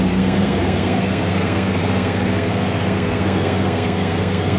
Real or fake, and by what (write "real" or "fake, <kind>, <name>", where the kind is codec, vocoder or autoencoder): fake, codec, SNAC